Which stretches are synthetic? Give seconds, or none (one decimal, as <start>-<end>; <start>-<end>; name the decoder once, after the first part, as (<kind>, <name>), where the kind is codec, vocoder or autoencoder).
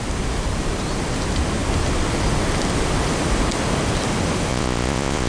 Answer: 4.5-5.3 (vocoder, Vocos)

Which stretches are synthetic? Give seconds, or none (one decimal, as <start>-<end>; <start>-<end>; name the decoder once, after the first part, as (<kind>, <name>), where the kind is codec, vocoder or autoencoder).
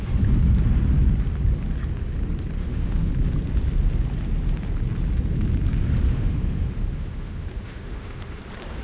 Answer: 2.6-3.1 (autoencoder, DAC-VAE); 6.1-8.4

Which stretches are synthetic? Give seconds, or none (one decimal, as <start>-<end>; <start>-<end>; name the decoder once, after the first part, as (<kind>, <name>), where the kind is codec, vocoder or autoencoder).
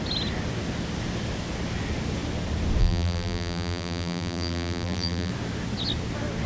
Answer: 2.8-5.3 (vocoder, BigVGAN v2)